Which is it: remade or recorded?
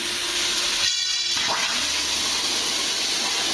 recorded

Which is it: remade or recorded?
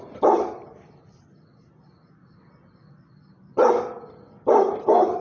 recorded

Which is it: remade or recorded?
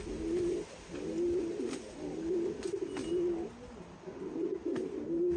recorded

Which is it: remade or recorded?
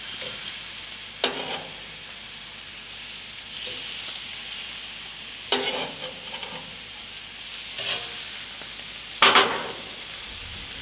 recorded